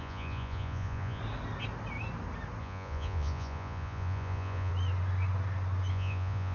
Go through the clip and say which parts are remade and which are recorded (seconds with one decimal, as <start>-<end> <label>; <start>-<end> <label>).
0.0-1.2 remade; 1.2-2.6 recorded; 2.6-4.7 remade; 4.7-5.9 recorded; 5.9-6.5 remade